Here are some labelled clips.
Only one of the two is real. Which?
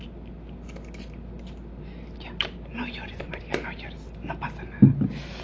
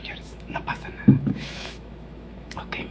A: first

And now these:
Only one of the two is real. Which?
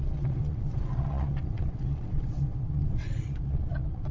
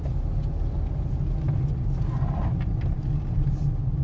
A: second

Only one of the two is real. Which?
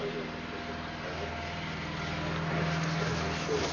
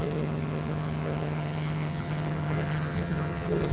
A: first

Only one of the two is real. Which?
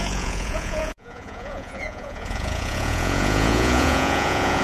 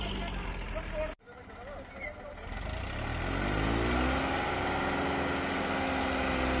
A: second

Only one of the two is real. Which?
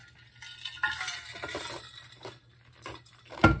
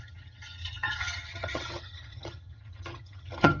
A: first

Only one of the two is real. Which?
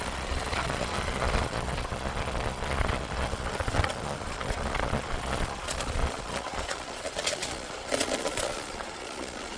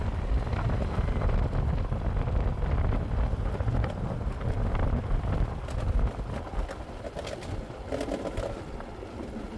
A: second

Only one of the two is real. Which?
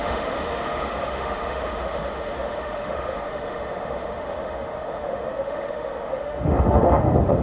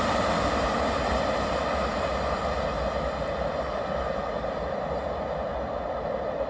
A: second